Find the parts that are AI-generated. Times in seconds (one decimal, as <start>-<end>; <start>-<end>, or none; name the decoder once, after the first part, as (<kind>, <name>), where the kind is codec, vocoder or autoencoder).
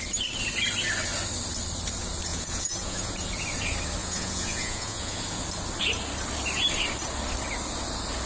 2.3-3.1 (vocoder, Vocos); 4.0-5.4